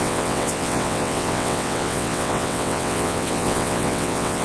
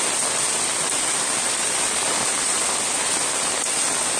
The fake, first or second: first